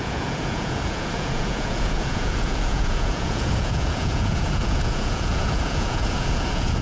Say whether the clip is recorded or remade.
remade